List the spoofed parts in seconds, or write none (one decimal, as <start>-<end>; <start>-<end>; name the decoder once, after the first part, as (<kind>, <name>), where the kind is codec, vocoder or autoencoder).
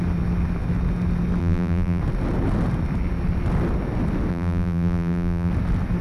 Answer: 1.4-2.0 (vocoder, BigVGAN v2); 4.3-5.5